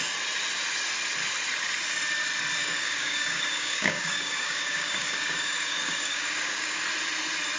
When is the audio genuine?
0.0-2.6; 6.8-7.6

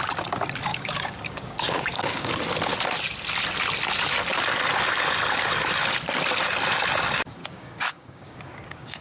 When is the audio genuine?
0.0-0.7; 2.3-7.4

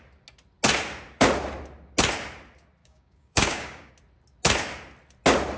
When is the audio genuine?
0.0-2.8; 3.9-5.6